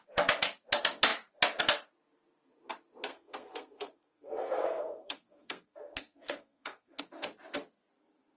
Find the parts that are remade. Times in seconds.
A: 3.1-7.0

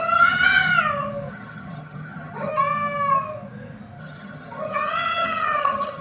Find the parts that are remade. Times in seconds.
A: 0.0-0.7; 1.3-2.5; 4.0-6.0

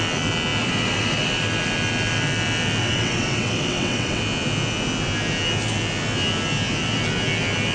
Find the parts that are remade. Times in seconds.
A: 2.8-4.2